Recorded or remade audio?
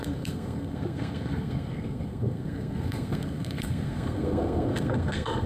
remade